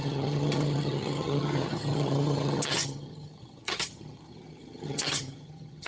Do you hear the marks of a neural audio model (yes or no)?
yes